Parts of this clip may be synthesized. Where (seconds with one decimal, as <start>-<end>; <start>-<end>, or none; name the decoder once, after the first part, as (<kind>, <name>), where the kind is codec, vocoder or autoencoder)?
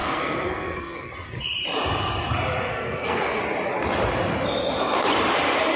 0.0-1.1 (codec, SNAC); 2.7-3.4